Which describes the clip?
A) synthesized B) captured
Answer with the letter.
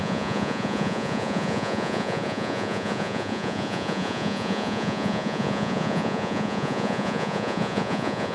A